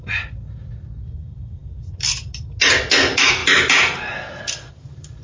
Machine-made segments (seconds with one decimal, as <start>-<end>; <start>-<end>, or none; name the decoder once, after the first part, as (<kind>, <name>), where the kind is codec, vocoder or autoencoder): none